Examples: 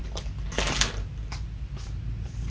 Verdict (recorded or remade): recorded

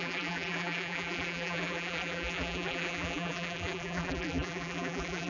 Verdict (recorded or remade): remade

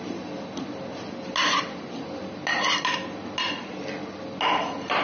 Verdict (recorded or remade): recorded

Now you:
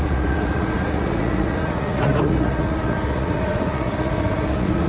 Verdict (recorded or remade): remade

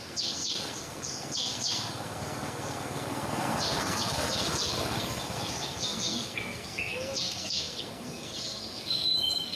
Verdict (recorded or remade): remade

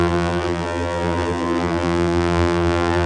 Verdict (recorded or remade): remade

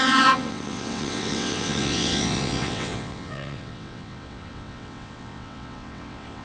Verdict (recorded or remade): remade